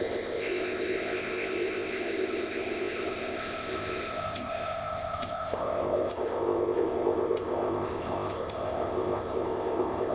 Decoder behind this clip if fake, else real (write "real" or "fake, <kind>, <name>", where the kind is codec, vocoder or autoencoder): fake, codec, ZipCodec